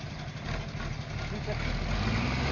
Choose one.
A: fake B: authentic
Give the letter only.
B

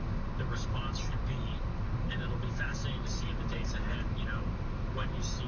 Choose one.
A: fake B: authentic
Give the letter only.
B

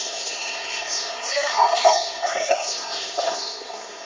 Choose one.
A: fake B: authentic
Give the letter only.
A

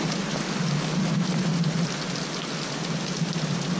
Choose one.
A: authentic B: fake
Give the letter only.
A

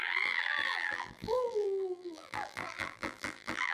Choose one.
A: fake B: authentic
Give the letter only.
A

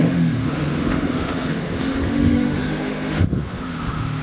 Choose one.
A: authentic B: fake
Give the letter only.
B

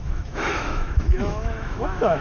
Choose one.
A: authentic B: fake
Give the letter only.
B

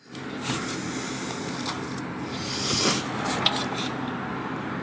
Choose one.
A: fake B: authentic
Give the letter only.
B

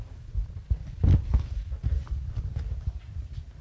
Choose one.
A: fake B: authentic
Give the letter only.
B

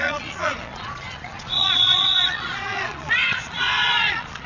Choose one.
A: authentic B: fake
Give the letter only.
B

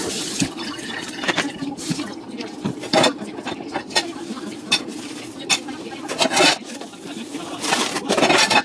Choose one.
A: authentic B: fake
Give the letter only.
B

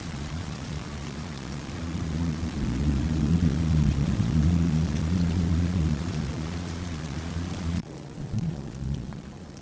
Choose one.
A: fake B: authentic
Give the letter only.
A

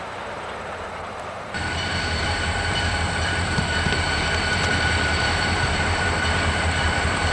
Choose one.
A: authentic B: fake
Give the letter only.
B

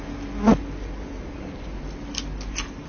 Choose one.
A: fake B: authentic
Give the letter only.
B